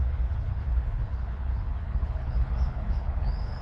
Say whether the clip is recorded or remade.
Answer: remade